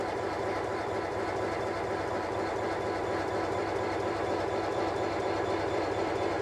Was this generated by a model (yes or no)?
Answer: yes